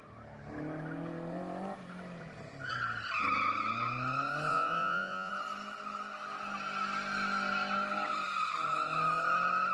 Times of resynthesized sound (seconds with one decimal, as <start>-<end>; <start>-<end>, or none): 4.5-5.3